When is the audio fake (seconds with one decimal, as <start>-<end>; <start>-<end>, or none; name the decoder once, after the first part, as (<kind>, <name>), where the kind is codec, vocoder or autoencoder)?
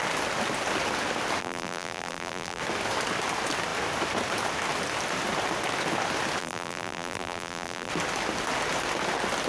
1.4-2.6 (vocoder, BigVGAN v2); 6.4-7.9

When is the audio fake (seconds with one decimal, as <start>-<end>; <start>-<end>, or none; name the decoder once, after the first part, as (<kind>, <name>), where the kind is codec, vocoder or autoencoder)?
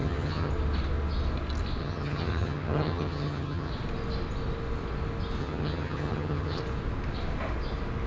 0.0-0.5 (vocoder, HiFi-GAN); 1.8-3.7; 5.4-6.6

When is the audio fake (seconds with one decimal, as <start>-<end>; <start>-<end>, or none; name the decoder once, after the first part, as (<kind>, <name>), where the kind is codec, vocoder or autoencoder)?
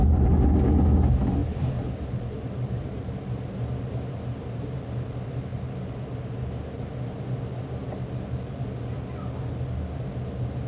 1.4-3.1 (vocoder, BigVGAN v2)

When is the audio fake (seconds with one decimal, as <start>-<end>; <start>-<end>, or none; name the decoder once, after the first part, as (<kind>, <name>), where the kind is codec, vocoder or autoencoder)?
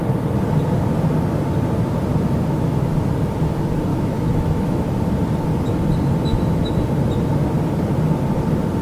3.9-4.8 (autoencoder, DAC-VAE); 6.3-6.8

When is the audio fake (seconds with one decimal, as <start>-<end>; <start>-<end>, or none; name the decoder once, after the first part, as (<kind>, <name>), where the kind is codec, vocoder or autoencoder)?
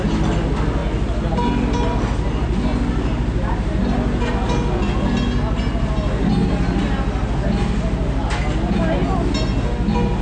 none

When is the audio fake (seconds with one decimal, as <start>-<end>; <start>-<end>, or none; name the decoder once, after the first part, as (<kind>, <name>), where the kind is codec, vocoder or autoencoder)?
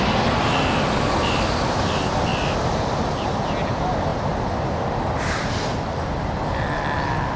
none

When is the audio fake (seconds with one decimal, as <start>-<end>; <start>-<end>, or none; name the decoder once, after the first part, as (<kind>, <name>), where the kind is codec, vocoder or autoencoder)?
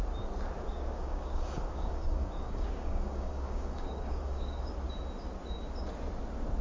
0.7-4.7 (codec, DAC)